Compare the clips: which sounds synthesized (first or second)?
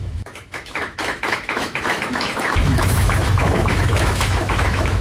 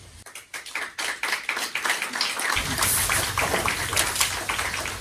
first